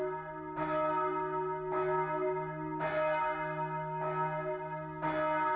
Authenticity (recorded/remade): recorded